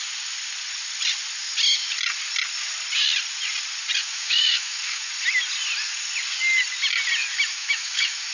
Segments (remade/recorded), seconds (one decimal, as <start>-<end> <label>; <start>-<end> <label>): 0.0-4.0 recorded; 4.0-5.1 remade; 5.1-7.5 recorded; 7.5-8.3 remade